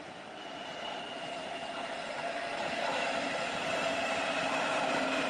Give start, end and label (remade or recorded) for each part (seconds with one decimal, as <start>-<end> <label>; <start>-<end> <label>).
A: 0.0-5.3 recorded